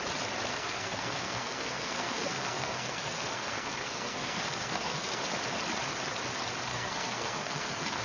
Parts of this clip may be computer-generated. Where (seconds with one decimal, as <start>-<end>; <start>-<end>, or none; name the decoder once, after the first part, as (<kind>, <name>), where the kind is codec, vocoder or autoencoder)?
0.5-5.2 (codec, SNAC); 6.7-8.0